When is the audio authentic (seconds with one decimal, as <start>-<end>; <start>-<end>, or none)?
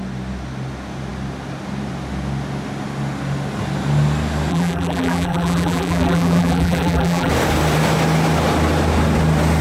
0.0-4.5; 7.3-9.6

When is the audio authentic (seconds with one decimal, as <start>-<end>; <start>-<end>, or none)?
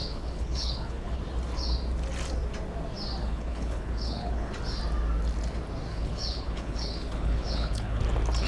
1.2-3.2; 4.5-5.9; 8.0-8.5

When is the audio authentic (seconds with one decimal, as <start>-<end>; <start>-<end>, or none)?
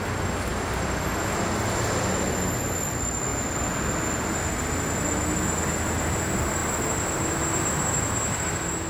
0.0-8.9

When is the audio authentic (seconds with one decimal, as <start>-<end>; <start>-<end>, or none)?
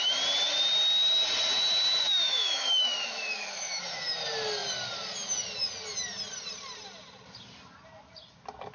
0.0-2.0; 3.8-8.7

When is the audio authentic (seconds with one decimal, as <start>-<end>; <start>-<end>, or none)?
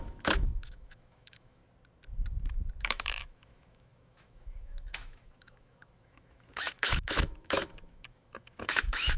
1.6-2.8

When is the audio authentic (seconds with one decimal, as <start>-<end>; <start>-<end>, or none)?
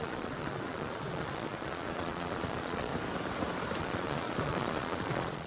2.9-3.8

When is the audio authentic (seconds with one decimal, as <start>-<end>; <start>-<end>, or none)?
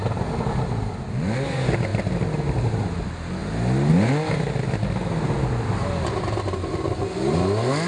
0.0-7.9